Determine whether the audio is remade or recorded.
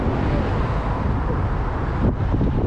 recorded